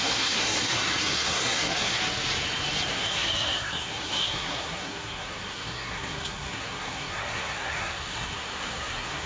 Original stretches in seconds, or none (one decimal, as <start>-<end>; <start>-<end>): 2.0-2.9